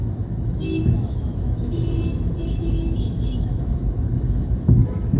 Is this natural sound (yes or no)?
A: no